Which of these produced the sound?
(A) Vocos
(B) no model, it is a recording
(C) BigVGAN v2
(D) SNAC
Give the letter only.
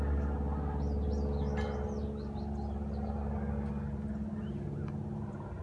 B